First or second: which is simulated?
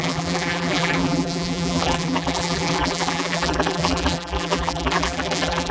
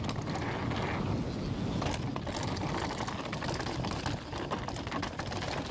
first